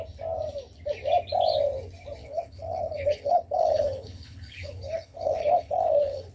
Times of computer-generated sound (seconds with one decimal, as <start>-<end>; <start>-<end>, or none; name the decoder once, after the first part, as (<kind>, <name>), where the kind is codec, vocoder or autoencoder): 2.2-6.3 (codec, HILCodec)